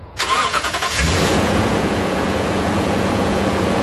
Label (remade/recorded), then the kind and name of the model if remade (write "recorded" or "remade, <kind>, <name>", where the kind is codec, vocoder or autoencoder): remade, vocoder, Vocos